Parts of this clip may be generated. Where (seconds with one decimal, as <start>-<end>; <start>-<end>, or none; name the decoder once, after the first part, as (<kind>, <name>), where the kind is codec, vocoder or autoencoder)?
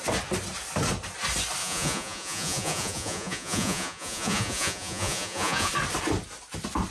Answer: 1.6-5.7 (vocoder, Vocos)